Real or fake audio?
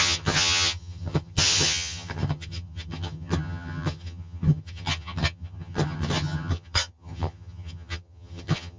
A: fake